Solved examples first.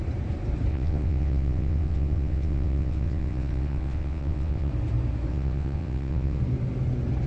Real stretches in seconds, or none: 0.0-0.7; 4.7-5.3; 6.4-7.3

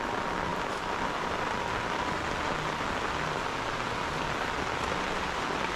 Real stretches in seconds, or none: 0.0-5.8

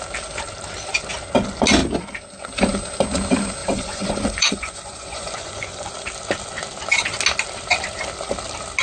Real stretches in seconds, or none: 0.0-3.6; 5.9-8.8

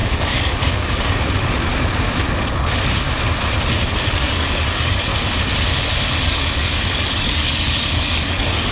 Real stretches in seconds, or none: 1.7-4.1; 5.1-6.2